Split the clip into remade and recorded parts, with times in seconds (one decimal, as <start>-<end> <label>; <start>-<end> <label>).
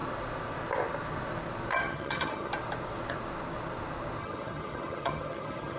0.0-1.7 recorded; 1.7-2.5 remade; 2.5-4.2 recorded; 4.2-5.8 remade